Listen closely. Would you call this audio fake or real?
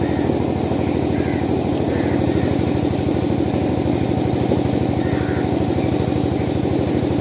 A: real